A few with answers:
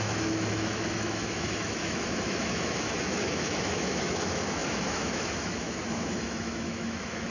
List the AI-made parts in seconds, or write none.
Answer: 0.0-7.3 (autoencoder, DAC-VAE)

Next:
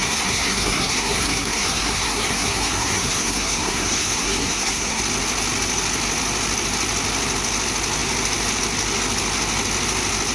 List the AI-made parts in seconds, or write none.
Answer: 0.0-5.0 (codec, SNAC)

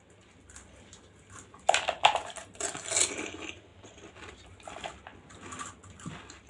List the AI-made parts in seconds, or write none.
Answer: none

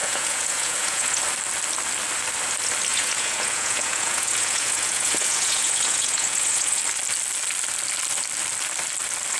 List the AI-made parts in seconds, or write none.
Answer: 0.0-1.2 (vocoder, Vocos); 2.9-6.8